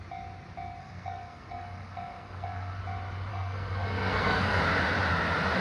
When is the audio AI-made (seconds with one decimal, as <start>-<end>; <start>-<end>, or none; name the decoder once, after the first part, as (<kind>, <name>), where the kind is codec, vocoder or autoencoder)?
0.8-2.8 (codec, SNAC); 3.3-4.6